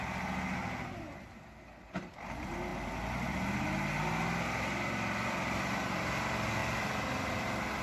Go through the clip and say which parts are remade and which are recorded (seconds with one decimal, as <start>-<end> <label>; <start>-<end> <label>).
0.0-7.8 recorded